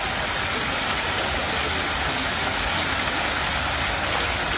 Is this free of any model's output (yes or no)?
yes